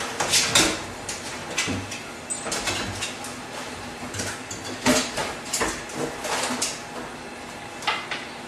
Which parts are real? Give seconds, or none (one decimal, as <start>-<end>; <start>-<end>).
0.0-8.5